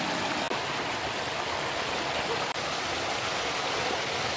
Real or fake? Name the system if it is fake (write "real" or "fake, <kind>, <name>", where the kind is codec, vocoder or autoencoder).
real